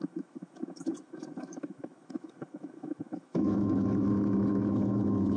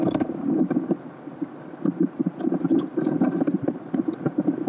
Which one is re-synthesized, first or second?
first